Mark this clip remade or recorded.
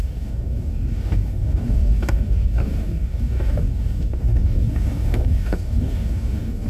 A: remade